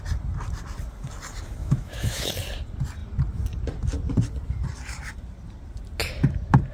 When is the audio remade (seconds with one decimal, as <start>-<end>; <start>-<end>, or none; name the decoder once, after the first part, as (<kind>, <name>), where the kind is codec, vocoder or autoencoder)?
1.6-2.3 (autoencoder, DAC-VAE)